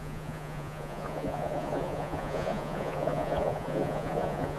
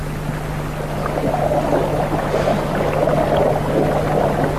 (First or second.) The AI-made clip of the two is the first